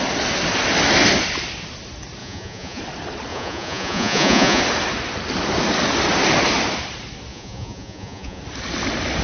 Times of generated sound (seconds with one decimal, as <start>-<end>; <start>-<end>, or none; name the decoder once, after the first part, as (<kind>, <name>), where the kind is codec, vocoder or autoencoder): 2.2-2.8 (vocoder, Vocos); 3.3-4.6; 7.3-8.4